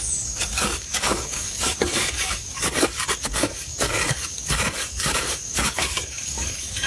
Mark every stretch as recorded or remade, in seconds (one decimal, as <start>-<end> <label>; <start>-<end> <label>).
0.0-6.9 remade